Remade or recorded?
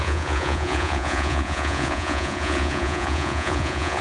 remade